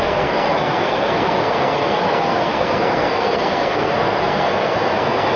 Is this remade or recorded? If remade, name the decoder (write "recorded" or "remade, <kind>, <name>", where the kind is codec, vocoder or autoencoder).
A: remade, codec, SNAC